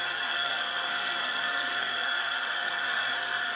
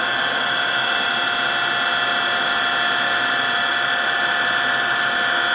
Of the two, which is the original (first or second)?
second